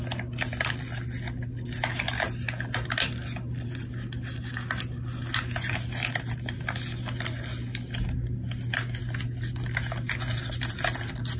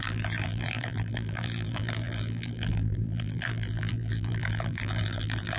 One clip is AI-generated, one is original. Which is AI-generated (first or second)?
second